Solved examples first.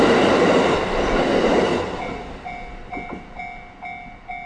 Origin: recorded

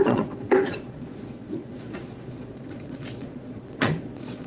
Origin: remade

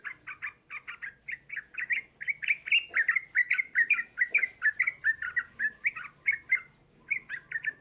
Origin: recorded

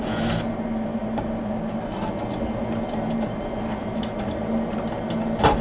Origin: recorded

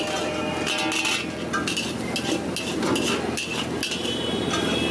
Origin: recorded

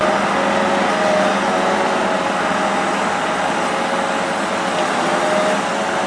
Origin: recorded